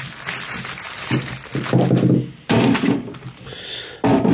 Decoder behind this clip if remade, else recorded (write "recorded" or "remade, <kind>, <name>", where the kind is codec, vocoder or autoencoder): recorded